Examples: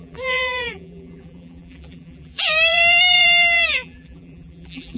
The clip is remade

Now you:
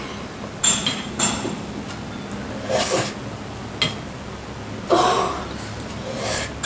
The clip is recorded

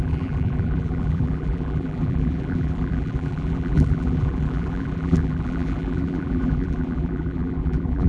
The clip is remade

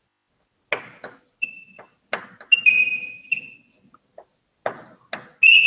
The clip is recorded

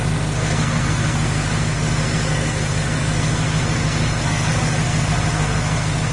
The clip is remade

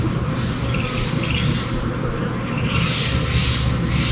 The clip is recorded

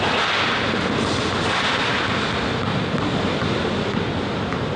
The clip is recorded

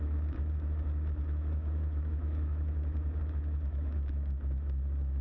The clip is remade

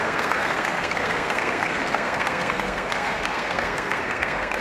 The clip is remade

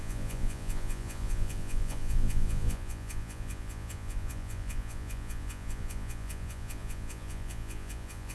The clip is remade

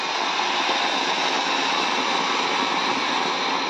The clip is recorded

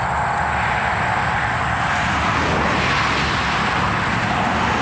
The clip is recorded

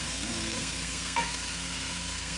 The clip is remade